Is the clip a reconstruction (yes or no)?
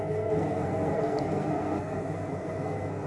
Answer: yes